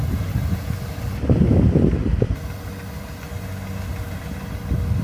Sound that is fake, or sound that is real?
real